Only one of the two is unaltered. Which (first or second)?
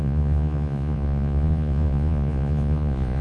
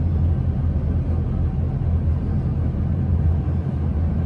second